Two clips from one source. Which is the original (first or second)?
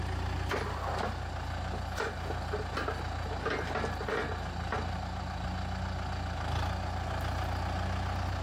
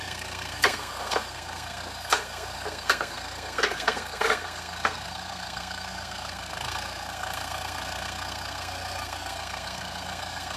first